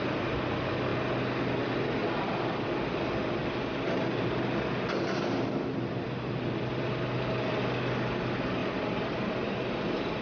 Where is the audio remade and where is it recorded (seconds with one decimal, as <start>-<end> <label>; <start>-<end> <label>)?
0.0-8.6 recorded; 8.6-10.2 remade